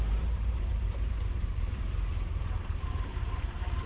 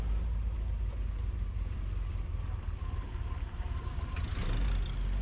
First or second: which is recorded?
second